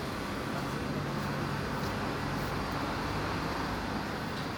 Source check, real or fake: real